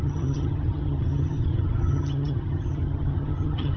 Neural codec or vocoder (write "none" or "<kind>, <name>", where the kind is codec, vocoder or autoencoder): vocoder, HiFi-GAN